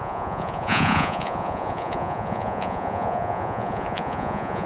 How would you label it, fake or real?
fake